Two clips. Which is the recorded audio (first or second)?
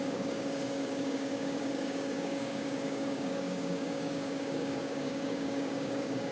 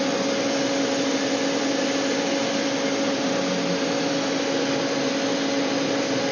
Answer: second